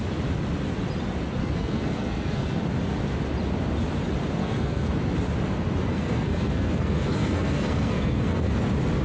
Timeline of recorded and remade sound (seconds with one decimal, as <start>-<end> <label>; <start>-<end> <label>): 0.0-1.4 recorded; 1.4-2.6 remade; 2.6-4.4 recorded; 4.4-4.9 remade; 4.9-5.9 recorded; 5.9-8.5 remade; 8.5-9.0 recorded